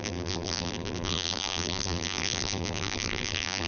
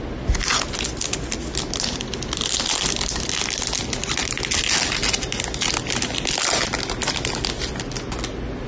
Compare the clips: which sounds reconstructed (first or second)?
first